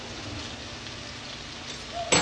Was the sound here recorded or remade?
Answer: recorded